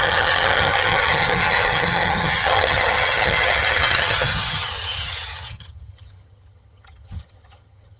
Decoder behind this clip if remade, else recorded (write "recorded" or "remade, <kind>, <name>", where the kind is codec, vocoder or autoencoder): remade, vocoder, HiFi-GAN